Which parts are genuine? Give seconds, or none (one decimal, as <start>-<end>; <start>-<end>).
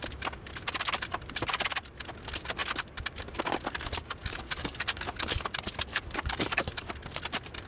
0.0-4.2; 5.5-5.9; 6.9-7.7